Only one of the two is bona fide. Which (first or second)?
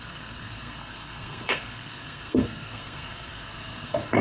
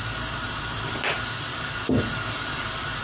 second